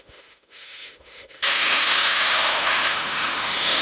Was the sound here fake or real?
fake